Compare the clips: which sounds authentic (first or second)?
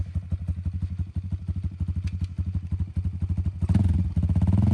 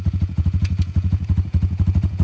first